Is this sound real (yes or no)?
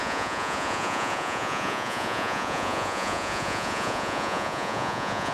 no